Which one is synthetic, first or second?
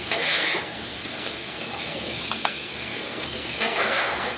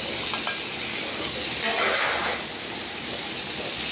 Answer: first